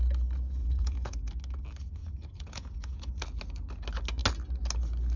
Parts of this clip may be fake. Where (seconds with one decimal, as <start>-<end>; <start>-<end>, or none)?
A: 0.6-1.3; 2.0-3.1